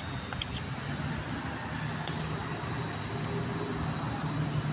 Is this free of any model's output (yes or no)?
yes